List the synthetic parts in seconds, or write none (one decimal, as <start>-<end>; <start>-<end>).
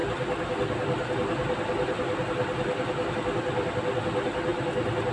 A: none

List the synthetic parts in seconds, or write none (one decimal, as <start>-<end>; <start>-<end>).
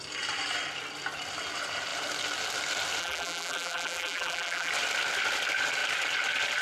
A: 3.0-4.7